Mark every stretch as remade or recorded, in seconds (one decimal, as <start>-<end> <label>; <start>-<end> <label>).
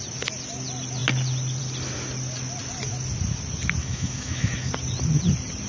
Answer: 0.0-3.8 recorded; 3.8-4.7 remade; 4.7-5.7 recorded